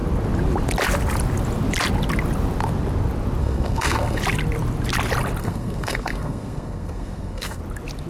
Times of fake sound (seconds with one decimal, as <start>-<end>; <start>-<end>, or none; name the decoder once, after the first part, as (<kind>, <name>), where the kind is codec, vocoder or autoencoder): 3.4-4.2 (codec, SNAC); 5.4-7.6